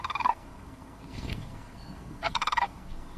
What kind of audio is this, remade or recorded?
remade